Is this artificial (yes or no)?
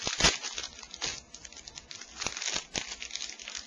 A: no